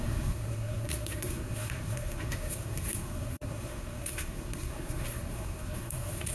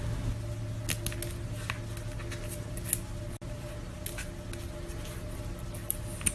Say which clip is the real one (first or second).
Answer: second